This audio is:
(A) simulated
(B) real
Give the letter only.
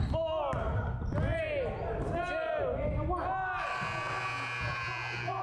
B